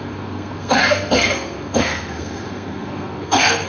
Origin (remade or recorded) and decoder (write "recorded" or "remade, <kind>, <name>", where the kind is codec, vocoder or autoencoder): remade, codec, SNAC